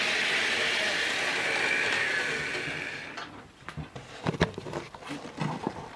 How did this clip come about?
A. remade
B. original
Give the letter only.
A